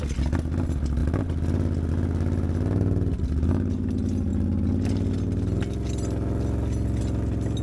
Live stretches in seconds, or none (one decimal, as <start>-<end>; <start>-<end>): 0.0-7.6